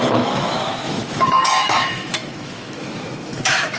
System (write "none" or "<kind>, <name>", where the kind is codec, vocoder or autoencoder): autoencoder, DAC-VAE